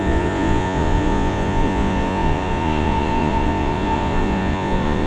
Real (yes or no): no